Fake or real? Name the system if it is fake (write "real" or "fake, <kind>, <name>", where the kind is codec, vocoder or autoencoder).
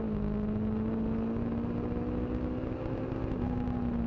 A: real